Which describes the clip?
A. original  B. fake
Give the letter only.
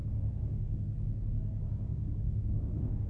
B